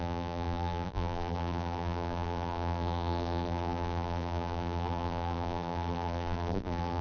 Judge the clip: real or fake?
fake